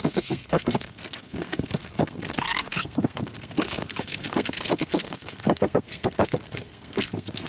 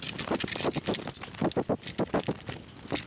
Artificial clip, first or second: first